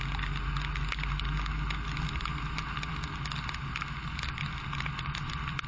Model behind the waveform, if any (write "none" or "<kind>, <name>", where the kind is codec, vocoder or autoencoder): none